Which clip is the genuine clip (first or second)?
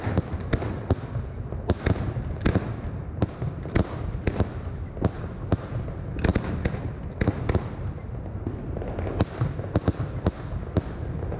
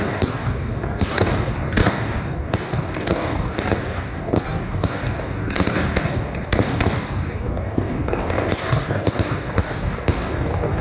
first